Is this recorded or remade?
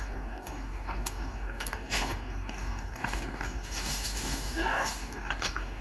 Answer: remade